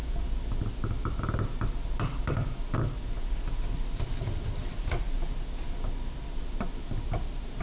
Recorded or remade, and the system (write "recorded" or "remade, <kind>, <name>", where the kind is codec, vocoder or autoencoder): recorded